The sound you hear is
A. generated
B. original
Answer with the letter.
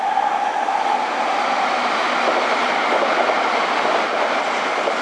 B